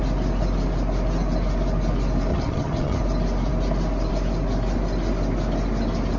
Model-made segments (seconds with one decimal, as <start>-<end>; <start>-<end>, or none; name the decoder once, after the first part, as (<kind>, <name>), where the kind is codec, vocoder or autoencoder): 2.3-3.0 (vocoder, HiFi-GAN)